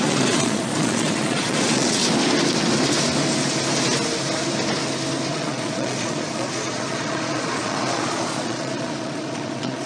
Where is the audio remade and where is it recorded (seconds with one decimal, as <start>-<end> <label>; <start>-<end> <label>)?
0.0-2.0 remade; 2.0-5.3 recorded; 5.3-9.9 remade